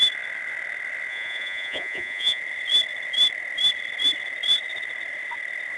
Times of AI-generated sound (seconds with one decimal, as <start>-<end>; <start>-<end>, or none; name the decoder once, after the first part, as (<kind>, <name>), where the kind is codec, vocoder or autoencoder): 1.1-2.4 (vocoder, Vocos)